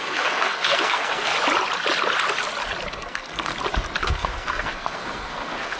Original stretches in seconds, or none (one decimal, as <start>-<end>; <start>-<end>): 1.3-2.9; 3.5-4.0